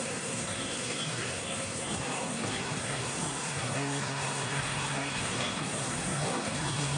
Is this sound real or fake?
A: fake